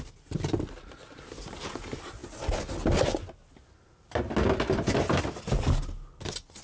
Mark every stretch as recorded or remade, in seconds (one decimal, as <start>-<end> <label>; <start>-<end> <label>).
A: 0.0-6.6 recorded